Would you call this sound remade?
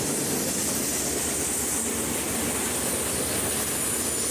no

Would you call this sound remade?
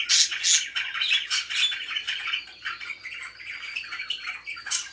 no